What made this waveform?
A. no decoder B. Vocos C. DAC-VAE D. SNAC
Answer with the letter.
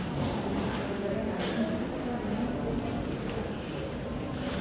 A